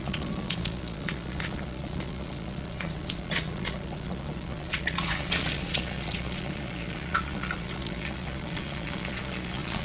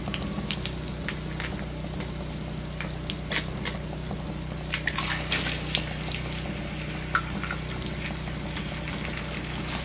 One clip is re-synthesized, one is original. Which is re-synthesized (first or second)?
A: first